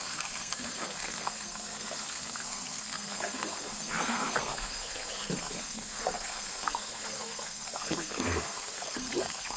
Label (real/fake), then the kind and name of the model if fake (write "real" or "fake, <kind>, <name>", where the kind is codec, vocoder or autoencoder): fake, codec, SNAC